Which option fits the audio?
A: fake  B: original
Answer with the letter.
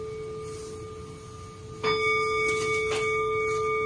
B